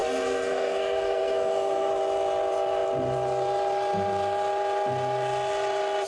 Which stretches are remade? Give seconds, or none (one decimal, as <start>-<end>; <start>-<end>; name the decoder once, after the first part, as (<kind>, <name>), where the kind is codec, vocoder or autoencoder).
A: 0.0-1.9 (codec, SNAC)